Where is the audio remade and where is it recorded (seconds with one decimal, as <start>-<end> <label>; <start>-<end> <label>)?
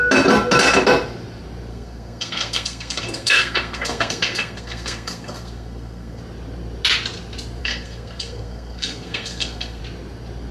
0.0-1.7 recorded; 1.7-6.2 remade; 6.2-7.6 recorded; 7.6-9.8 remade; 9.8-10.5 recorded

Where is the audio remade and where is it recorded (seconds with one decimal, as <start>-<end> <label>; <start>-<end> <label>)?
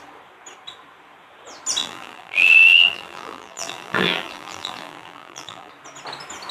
0.0-1.8 recorded; 1.8-5.7 remade; 5.7-6.5 recorded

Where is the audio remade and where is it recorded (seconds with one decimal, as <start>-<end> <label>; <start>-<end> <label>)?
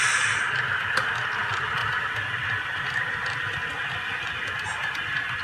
0.0-5.4 recorded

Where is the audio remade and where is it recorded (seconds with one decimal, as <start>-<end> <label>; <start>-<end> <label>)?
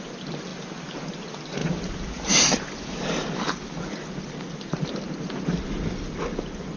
0.0-1.6 recorded; 1.6-5.3 remade; 5.3-6.8 recorded